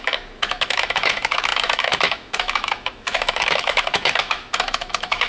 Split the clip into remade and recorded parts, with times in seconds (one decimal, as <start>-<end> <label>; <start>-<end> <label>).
0.0-5.3 remade